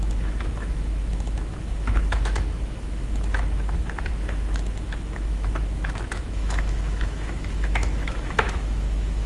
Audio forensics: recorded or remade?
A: remade